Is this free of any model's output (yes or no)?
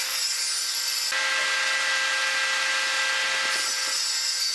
yes